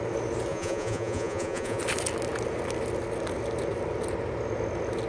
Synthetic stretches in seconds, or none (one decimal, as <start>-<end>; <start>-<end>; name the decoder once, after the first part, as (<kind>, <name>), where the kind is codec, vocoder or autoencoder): 0.5-1.8 (vocoder, Vocos)